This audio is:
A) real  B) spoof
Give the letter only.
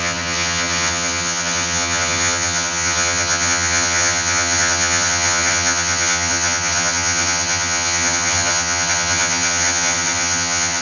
B